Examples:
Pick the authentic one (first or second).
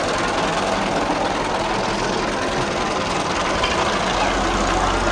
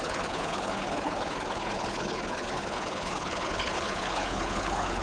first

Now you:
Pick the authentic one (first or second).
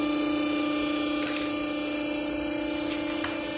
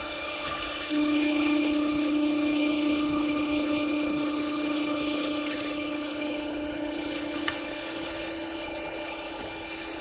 first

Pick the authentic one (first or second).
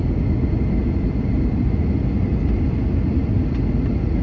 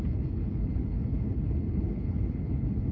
first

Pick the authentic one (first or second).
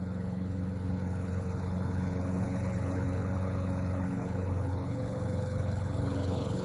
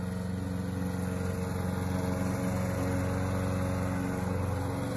second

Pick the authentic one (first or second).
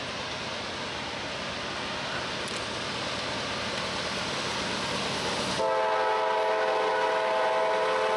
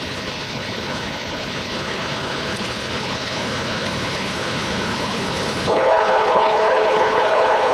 first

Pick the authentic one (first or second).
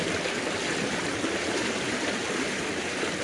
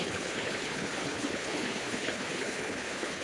first